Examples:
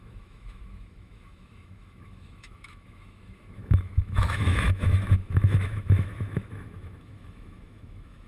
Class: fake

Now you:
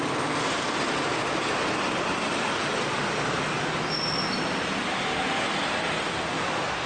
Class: real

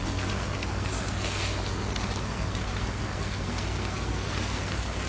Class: fake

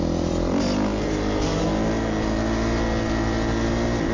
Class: real